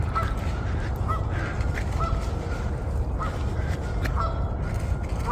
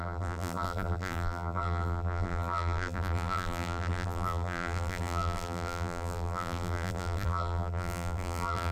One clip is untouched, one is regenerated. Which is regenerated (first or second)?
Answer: second